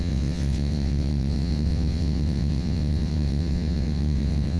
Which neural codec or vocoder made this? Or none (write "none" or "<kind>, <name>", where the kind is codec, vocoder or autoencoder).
vocoder, WaveNeXt